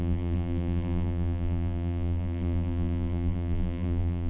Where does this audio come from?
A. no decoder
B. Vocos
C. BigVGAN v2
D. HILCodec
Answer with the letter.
C